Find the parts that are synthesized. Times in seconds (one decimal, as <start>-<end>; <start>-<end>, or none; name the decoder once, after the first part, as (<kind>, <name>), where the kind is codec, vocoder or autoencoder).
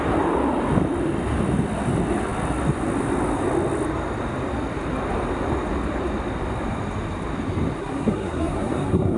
7.8-9.2 (codec, SNAC)